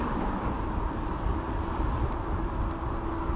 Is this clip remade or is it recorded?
recorded